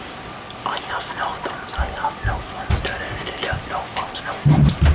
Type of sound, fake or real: real